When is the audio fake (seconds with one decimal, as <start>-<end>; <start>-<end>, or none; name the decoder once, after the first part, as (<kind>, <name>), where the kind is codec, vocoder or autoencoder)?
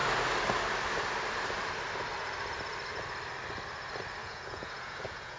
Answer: 4.2-5.4 (vocoder, Vocos)